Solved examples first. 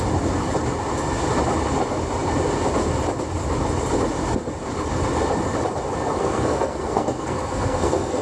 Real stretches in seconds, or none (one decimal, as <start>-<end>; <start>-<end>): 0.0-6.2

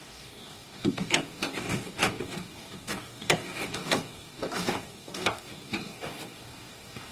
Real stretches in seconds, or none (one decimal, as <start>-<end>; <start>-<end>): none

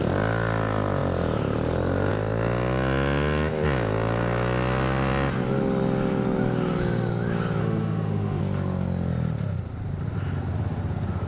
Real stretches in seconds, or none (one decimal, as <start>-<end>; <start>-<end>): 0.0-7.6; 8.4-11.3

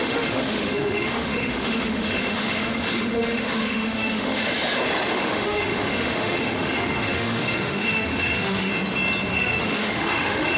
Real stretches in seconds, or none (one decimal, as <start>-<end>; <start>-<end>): 4.5-5.1; 8.7-9.3